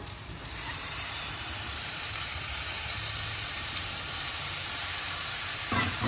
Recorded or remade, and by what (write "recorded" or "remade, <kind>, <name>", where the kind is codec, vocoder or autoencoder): remade, vocoder, BigVGAN v2